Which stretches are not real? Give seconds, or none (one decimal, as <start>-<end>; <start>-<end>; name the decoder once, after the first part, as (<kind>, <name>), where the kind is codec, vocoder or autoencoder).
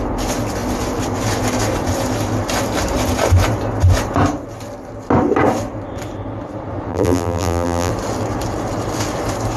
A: 6.9-7.9 (vocoder, BigVGAN v2)